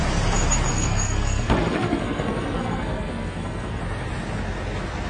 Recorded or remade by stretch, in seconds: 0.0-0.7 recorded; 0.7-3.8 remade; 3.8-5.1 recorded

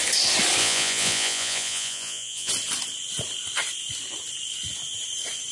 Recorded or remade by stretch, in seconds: 0.0-0.6 recorded; 0.6-2.5 remade; 2.5-5.5 recorded

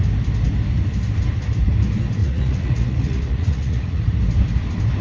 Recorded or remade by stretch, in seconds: 0.0-2.2 recorded; 2.2-4.0 remade; 4.0-5.0 recorded

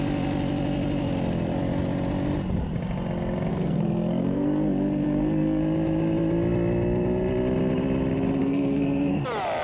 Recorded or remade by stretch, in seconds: 0.0-3.5 recorded; 3.5-5.6 remade; 5.6-8.4 recorded; 8.4-9.2 remade; 9.2-9.6 recorded

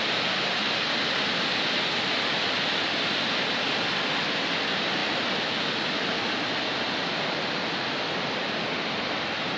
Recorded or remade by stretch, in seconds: 0.0-9.6 recorded

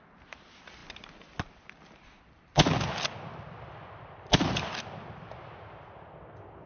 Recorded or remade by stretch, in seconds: 0.0-6.7 recorded